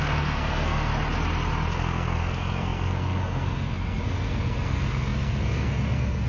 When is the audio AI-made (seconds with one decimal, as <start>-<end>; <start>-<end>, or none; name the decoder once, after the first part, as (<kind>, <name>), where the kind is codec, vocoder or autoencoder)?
0.0-0.9 (codec, SNAC); 1.7-6.3